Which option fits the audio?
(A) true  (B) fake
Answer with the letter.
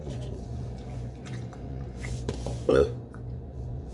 B